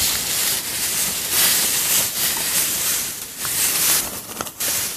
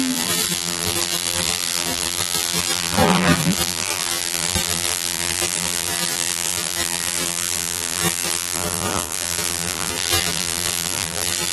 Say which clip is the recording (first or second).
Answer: first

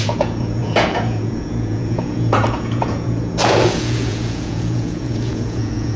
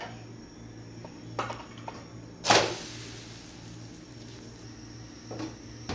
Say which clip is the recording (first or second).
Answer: second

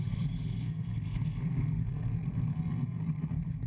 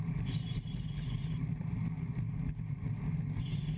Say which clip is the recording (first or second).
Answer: second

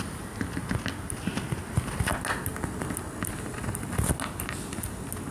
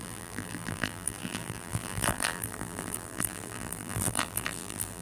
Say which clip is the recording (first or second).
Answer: first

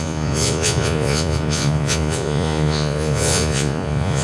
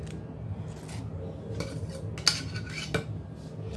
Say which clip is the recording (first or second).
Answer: second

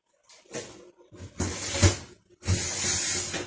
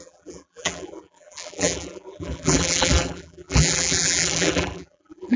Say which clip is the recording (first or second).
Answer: first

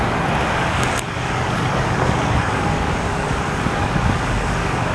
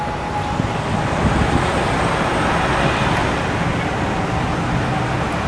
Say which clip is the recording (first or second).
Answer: second